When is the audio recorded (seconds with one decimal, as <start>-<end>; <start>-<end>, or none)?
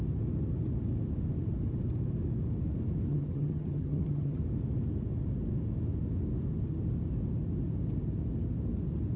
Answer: 0.0-3.1; 4.4-9.2